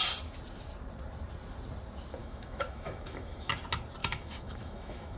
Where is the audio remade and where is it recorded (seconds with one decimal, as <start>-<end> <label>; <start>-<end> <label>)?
0.0-2.2 recorded; 2.2-3.5 remade; 3.5-4.0 recorded; 4.0-5.2 remade